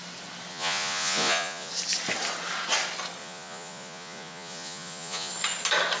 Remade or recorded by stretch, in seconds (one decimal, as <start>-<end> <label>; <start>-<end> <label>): 0.0-0.5 recorded; 0.5-1.7 remade; 1.7-3.2 recorded; 3.2-5.3 remade; 5.3-6.0 recorded